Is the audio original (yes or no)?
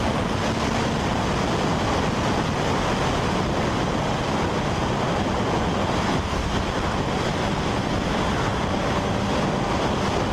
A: yes